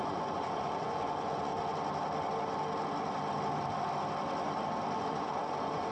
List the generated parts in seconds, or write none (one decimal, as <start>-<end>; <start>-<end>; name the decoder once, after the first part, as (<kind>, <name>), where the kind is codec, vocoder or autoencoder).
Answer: 0.0-1.5 (vocoder, Vocos); 5.0-5.9